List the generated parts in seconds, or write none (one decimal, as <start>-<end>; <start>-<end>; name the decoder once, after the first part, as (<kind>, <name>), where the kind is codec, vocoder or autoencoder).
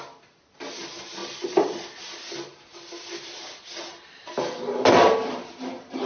none